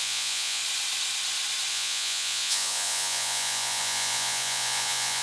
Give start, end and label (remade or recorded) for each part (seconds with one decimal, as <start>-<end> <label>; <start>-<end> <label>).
0.0-0.6 remade; 0.6-1.7 recorded; 1.7-5.2 remade